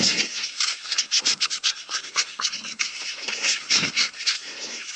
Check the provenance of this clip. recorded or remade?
remade